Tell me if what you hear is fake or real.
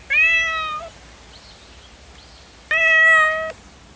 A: real